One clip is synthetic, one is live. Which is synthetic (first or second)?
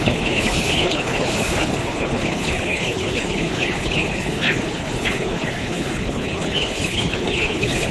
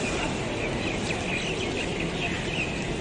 first